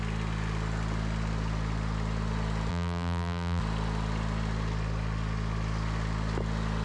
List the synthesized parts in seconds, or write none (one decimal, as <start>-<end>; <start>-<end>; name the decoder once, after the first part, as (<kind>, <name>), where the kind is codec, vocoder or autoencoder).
2.7-3.6 (vocoder, BigVGAN v2)